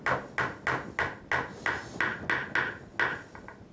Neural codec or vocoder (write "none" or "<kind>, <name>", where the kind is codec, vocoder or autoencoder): none